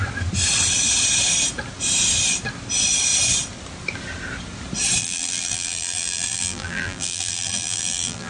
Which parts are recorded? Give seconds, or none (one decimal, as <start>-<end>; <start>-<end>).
0.0-5.0